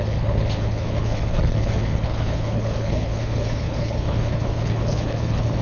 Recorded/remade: remade